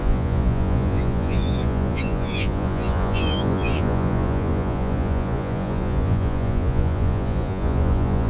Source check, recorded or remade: remade